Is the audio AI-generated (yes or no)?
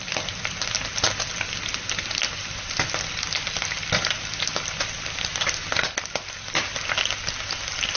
no